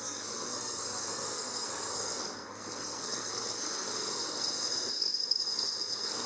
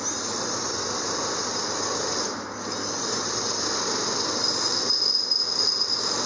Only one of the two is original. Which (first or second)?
second